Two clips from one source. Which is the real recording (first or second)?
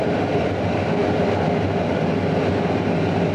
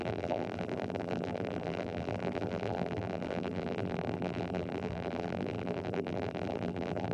first